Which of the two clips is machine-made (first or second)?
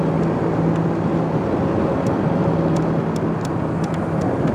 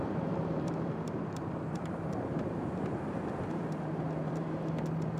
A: second